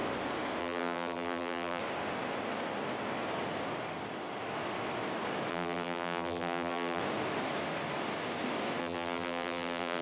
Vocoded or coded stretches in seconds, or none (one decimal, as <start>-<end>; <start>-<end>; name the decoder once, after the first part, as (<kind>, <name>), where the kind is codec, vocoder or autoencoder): 0.6-1.8 (vocoder, BigVGAN v2); 5.5-7.0; 8.8-10.0